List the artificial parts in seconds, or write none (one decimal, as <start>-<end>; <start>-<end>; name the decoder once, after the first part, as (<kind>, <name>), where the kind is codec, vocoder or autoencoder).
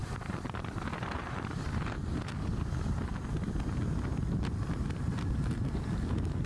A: 0.0-1.8 (vocoder, BigVGAN v2)